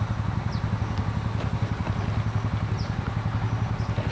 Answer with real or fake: real